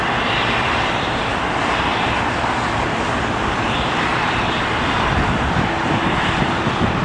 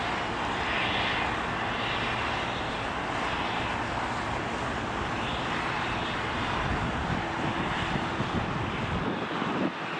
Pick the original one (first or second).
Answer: second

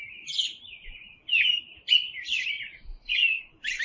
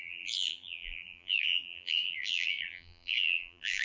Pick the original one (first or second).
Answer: first